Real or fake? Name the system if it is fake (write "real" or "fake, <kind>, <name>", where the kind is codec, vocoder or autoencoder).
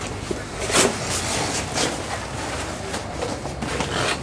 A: real